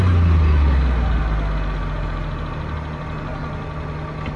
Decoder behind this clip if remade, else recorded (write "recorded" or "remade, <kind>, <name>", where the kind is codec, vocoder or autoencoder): recorded